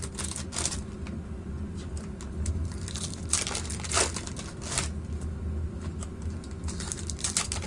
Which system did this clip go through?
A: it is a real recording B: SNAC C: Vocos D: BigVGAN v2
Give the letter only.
A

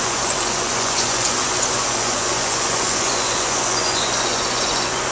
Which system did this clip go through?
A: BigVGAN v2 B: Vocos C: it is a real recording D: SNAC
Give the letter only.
B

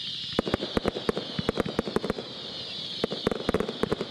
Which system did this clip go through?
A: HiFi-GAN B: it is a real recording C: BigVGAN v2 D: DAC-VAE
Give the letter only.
B